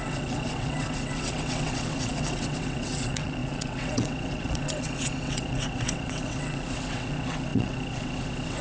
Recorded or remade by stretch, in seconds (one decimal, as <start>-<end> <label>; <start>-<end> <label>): 0.0-8.6 remade